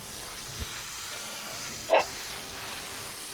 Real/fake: real